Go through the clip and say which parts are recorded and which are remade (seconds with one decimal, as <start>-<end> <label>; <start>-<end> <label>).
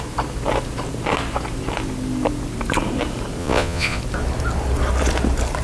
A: 0.0-3.4 recorded; 3.4-4.0 remade; 4.0-5.6 recorded